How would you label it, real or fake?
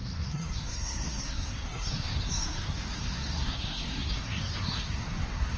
fake